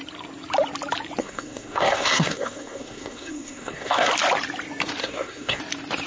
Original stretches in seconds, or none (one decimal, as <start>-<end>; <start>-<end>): 0.0-1.2; 4.1-5.0; 5.6-6.1